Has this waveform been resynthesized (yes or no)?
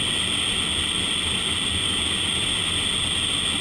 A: no